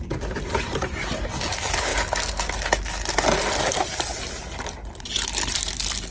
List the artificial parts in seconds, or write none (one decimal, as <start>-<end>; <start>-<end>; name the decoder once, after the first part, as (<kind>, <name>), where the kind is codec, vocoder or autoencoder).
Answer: none